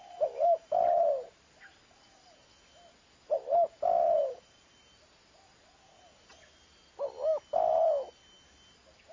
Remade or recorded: recorded